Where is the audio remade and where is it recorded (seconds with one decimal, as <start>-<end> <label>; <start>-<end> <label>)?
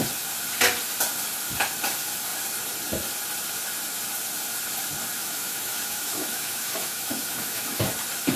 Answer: 0.0-5.2 recorded; 5.2-7.8 remade; 7.8-8.4 recorded